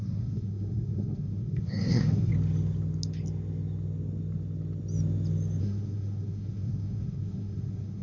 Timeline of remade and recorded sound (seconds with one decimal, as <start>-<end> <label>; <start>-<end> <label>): 0.0-2.3 remade; 2.3-5.6 recorded; 5.6-8.0 remade